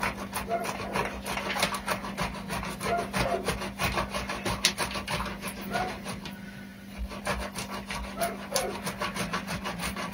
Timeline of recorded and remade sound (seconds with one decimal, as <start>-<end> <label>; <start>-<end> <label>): 0.0-10.1 recorded